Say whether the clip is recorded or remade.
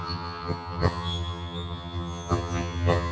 remade